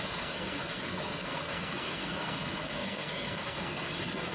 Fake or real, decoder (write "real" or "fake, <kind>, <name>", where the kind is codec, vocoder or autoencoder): fake, codec, SNAC